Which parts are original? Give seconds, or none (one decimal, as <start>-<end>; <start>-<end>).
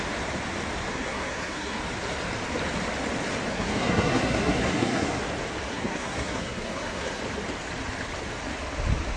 0.0-0.9; 1.8-3.5; 5.2-5.7; 7.2-9.2